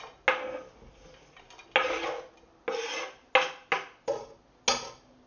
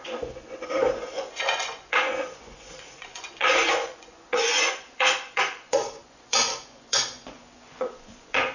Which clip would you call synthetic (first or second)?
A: second